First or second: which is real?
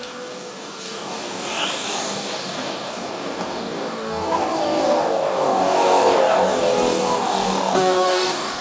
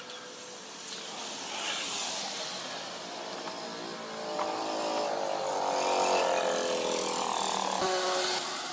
second